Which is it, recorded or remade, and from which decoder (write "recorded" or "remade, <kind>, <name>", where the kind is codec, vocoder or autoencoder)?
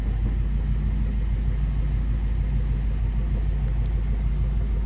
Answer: recorded